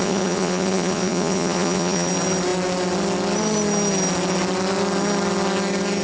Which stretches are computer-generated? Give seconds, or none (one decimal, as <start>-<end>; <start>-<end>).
0.0-2.1